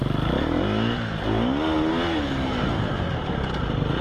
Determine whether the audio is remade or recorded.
recorded